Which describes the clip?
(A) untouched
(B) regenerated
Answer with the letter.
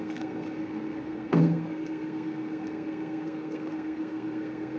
B